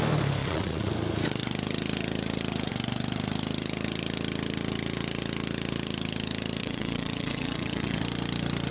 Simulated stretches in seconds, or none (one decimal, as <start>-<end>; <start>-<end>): 0.4-0.9; 6.6-8.0